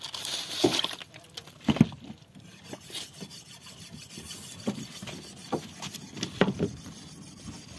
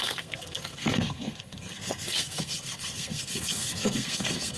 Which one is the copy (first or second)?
second